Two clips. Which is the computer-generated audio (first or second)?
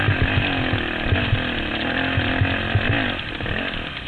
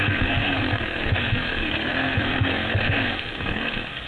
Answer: second